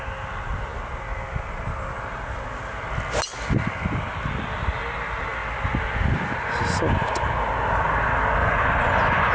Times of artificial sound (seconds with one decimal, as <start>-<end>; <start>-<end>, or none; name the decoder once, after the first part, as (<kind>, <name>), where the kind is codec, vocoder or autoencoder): 8.4-9.3 (vocoder, Vocos)